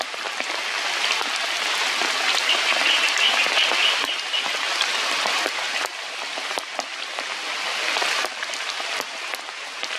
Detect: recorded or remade recorded